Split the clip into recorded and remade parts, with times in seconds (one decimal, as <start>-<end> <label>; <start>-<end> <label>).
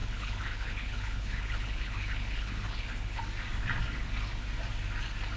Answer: 0.0-3.2 remade; 3.2-5.4 recorded